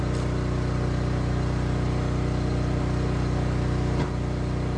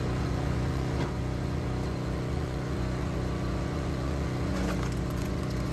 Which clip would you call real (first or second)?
first